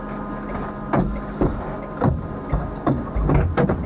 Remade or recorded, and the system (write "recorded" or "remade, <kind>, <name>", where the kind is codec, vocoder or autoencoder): recorded